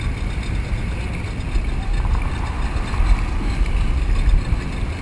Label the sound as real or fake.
real